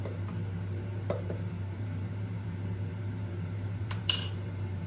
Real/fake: fake